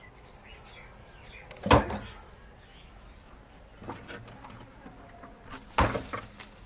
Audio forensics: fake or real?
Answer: real